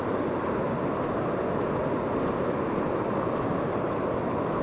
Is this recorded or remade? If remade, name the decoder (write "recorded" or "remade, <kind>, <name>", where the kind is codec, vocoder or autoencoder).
recorded